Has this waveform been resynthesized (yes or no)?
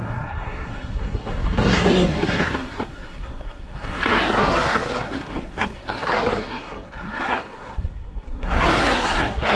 yes